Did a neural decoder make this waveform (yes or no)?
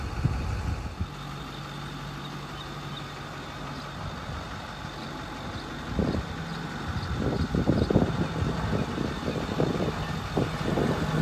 no